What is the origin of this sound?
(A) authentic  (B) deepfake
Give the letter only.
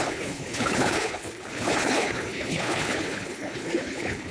B